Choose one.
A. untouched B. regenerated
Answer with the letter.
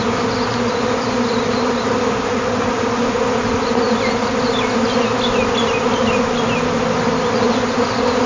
A